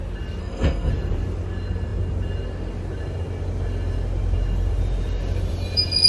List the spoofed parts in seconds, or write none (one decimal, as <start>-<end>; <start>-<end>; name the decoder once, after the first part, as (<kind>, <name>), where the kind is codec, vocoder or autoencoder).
0.4-0.9 (codec, SNAC)